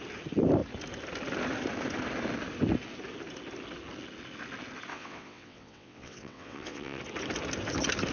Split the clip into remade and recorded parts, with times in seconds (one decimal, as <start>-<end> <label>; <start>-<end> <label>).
0.0-4.9 recorded; 4.9-7.0 remade; 7.0-8.1 recorded